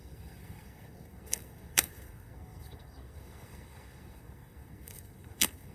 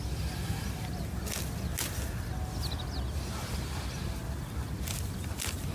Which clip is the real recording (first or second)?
second